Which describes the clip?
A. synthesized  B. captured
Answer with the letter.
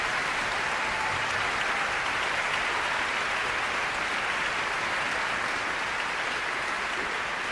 B